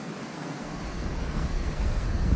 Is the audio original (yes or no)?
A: no